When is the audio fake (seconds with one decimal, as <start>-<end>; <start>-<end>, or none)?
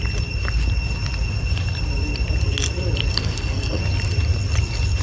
3.2-3.8